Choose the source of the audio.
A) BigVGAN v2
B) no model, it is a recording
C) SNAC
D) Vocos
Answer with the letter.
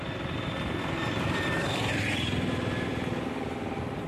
B